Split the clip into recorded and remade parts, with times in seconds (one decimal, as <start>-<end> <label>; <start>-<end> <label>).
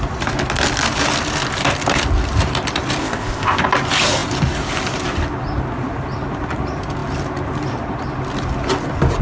0.0-3.0 recorded; 3.0-3.6 remade; 3.6-9.2 recorded